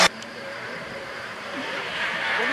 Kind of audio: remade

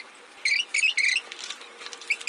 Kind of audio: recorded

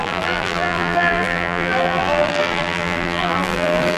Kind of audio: remade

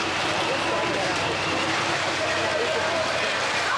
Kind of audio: remade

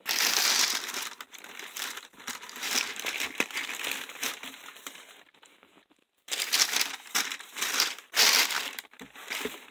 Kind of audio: remade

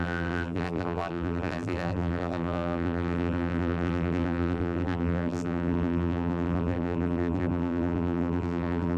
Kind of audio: remade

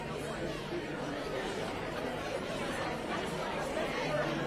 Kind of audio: remade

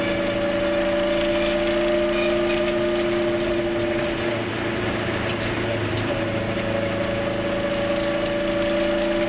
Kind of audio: recorded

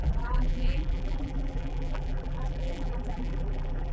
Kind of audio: remade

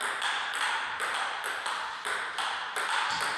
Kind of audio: recorded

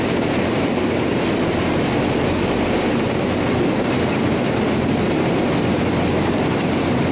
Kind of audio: recorded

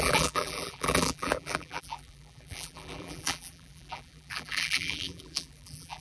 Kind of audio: remade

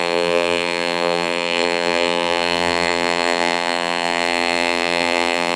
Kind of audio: remade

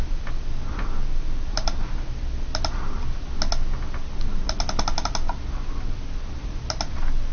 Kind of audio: recorded